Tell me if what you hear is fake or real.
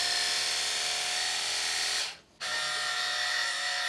real